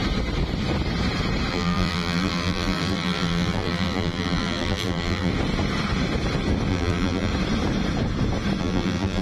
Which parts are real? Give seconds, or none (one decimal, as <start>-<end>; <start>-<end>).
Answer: 0.0-1.5; 5.3-6.7; 7.3-8.6